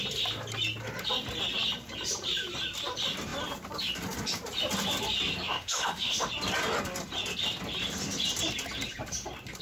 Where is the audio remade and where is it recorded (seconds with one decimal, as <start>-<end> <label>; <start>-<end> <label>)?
0.0-5.5 recorded; 5.5-6.3 remade; 6.3-9.6 recorded